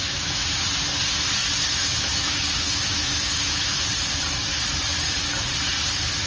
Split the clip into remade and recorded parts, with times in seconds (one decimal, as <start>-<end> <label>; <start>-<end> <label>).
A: 0.0-0.5 remade; 0.5-1.8 recorded; 1.8-3.9 remade; 3.9-6.3 recorded